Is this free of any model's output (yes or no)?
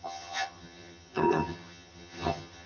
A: no